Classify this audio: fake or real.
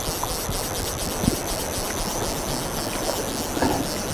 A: real